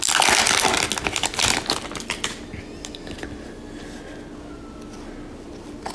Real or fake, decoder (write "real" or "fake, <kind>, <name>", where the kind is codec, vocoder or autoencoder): real